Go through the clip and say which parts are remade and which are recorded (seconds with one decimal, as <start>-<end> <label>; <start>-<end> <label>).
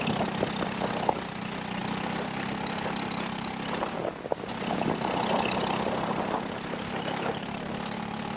0.0-8.4 recorded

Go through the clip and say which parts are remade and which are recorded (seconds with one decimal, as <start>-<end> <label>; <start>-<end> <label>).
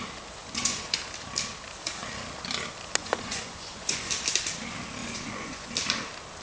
0.0-0.4 recorded; 0.4-1.0 remade; 1.0-3.0 recorded; 3.0-4.1 remade; 4.1-5.0 recorded; 5.0-5.7 remade; 5.7-6.4 recorded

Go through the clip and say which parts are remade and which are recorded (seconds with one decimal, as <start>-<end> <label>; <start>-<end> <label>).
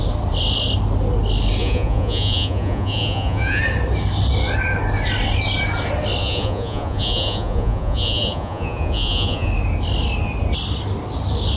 0.0-1.6 recorded; 1.6-3.6 remade; 3.6-6.2 recorded; 6.2-9.5 remade; 9.5-11.6 recorded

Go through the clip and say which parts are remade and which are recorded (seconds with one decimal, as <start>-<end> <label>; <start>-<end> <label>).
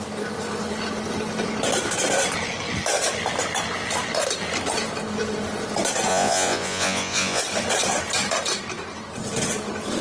0.0-6.1 recorded; 6.1-7.4 remade; 7.4-10.0 recorded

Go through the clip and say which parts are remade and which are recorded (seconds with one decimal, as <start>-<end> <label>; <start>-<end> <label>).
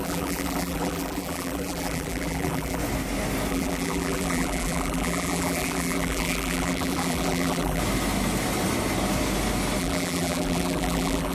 0.0-2.8 remade; 2.8-3.5 recorded; 3.5-7.8 remade; 7.8-9.8 recorded; 9.8-11.3 remade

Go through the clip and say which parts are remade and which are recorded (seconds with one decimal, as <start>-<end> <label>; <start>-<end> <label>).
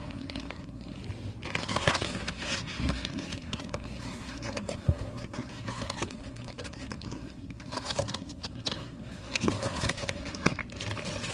0.0-1.0 remade; 1.0-1.6 recorded; 1.6-10.6 remade; 10.6-11.3 recorded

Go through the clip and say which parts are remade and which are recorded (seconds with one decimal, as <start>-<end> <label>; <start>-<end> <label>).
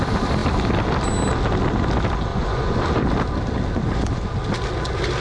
0.0-2.3 recorded; 2.3-2.9 remade; 2.9-5.2 recorded